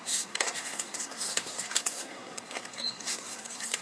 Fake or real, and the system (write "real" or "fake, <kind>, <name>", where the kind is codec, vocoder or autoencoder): fake, codec, SNAC